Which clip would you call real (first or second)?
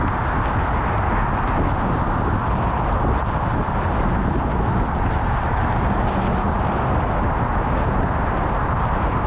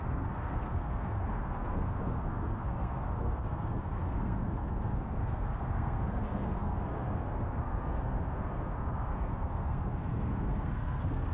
first